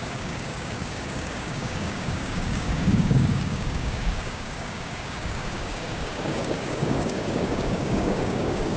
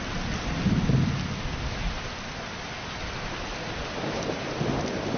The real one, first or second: second